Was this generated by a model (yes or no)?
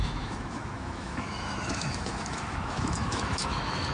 yes